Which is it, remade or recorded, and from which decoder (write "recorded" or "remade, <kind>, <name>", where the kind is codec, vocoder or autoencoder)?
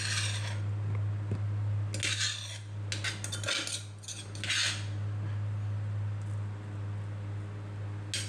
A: recorded